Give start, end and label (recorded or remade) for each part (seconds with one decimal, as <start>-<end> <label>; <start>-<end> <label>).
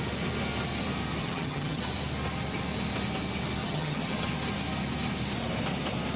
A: 0.0-1.2 recorded; 1.2-1.8 remade; 1.8-3.6 recorded; 3.6-4.2 remade; 4.2-6.2 recorded